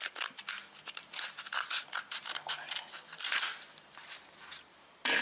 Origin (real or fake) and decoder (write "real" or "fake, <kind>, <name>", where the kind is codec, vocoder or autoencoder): real